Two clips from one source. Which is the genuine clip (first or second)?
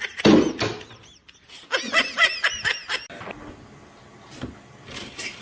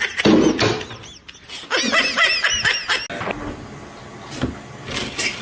second